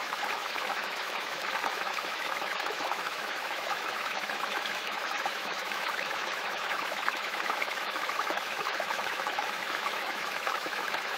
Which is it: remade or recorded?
remade